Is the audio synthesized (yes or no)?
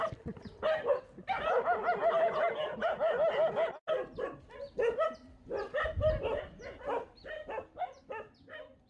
no